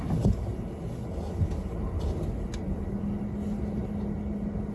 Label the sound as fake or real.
real